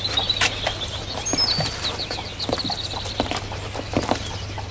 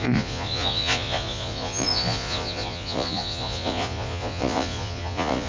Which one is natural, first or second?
first